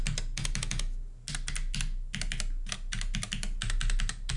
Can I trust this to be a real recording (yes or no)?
yes